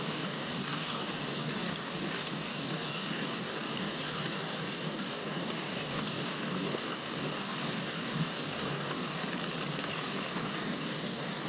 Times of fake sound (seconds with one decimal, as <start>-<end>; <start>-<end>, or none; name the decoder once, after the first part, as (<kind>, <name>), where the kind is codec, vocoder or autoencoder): 0.0-9.2 (codec, DAC); 9.8-11.5